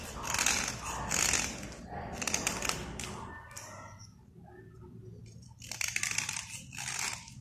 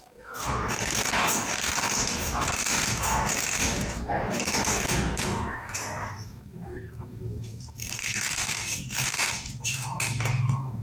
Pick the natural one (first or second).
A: first